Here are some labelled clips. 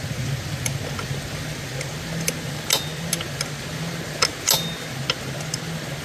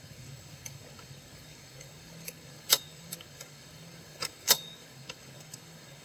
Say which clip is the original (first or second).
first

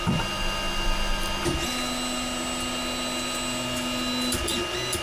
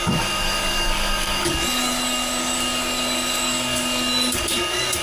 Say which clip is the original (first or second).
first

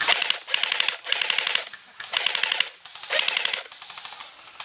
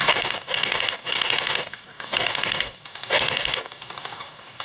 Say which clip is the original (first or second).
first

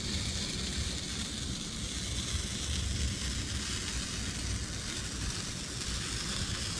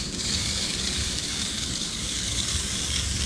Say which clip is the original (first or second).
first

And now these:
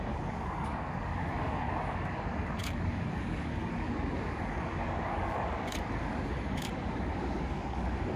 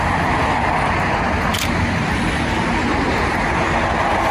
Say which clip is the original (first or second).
second